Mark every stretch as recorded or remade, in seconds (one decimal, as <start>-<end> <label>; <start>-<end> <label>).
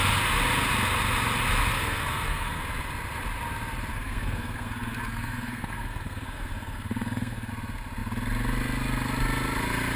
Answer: 0.0-1.7 recorded; 1.7-2.6 remade; 2.6-3.9 recorded; 3.9-7.5 remade; 7.5-10.0 recorded